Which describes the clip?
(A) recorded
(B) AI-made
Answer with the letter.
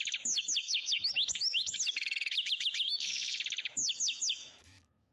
B